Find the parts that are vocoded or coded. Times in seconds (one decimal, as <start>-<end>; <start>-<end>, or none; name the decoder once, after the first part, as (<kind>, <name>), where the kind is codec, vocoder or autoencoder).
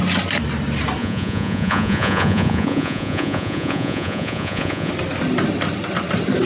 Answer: 1.0-4.9 (vocoder, Vocos)